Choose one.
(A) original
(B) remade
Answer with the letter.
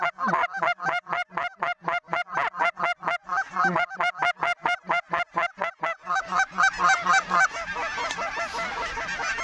A